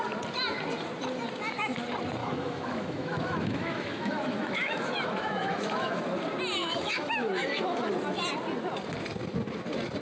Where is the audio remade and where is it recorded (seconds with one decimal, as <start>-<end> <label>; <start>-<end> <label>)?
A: 0.0-2.2 recorded; 2.2-6.0 remade; 6.0-6.6 recorded; 6.6-7.9 remade; 7.9-10.0 recorded